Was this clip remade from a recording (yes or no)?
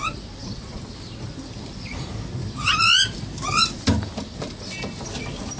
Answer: no